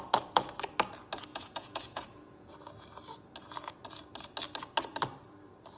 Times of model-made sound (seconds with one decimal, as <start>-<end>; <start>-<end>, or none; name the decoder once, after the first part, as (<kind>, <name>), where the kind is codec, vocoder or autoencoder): 1.3-2.5 (vocoder, Vocos)